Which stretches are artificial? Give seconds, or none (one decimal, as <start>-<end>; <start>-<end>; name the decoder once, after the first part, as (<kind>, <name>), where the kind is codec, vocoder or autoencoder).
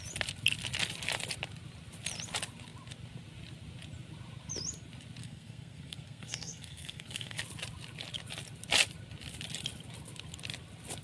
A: 5.2-7.4 (codec, SNAC)